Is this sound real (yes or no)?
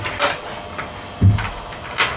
yes